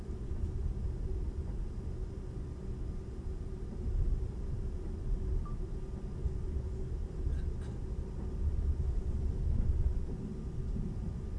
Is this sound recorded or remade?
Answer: recorded